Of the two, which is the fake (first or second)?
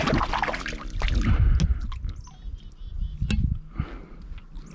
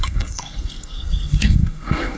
second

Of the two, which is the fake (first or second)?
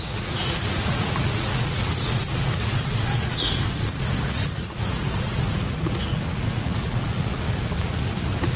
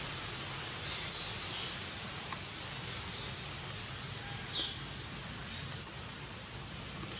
first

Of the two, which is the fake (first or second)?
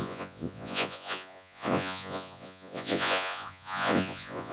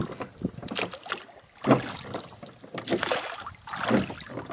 first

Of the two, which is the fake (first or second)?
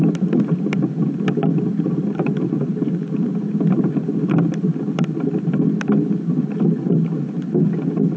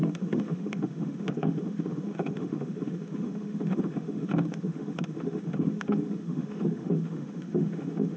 second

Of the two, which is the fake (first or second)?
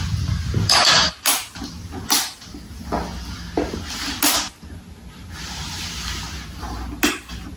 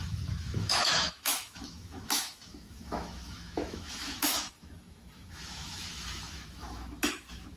second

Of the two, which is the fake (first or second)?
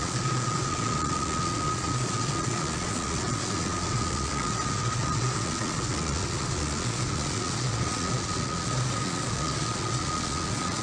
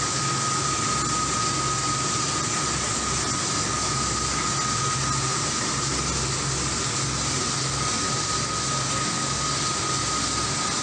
first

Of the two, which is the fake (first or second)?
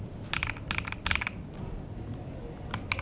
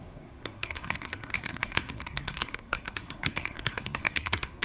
second